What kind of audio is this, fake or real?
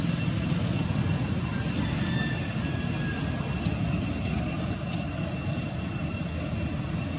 real